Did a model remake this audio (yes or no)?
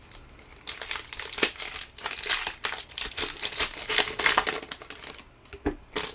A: no